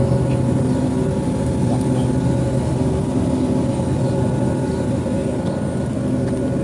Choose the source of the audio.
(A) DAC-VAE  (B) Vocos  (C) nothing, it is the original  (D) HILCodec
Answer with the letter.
C